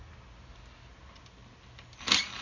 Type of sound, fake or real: real